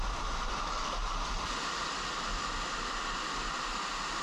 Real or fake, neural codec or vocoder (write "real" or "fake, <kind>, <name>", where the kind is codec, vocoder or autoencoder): real